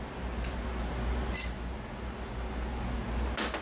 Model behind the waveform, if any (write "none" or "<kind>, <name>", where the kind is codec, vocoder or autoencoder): none